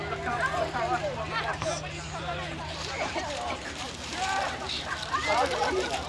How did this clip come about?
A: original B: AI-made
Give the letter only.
B